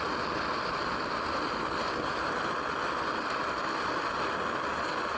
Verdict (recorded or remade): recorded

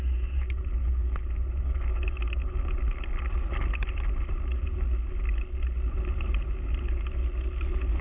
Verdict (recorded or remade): recorded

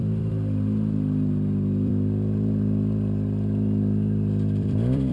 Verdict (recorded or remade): remade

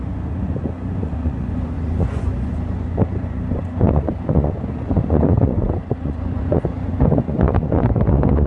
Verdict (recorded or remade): remade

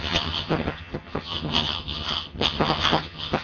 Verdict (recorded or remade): remade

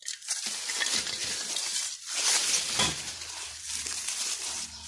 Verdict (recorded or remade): remade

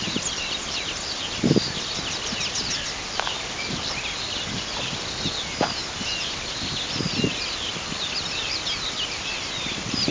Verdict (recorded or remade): recorded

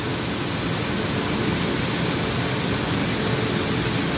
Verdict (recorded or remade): recorded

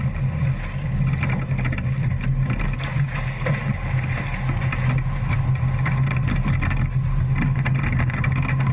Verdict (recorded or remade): recorded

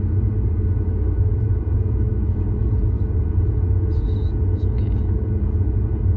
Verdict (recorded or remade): remade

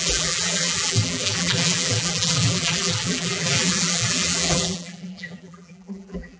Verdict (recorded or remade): remade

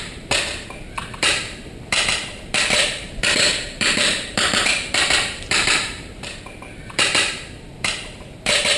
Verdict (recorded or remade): remade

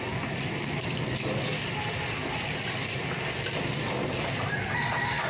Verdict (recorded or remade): recorded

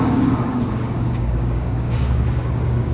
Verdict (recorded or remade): remade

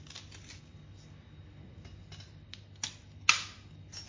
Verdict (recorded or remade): recorded